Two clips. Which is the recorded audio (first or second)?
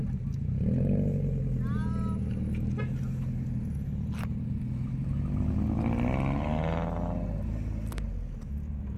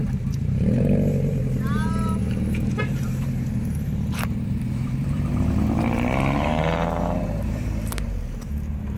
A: first